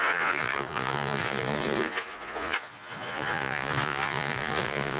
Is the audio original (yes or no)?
no